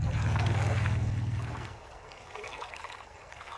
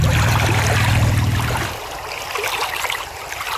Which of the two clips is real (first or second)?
second